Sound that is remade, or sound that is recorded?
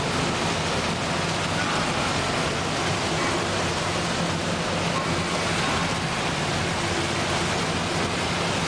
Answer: recorded